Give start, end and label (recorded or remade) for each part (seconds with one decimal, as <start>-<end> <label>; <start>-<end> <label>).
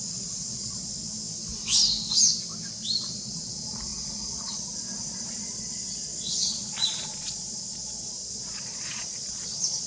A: 0.0-1.0 remade; 1.0-3.0 recorded; 3.0-9.9 remade